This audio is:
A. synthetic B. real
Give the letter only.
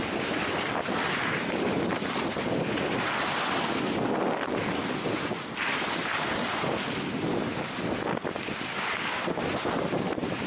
B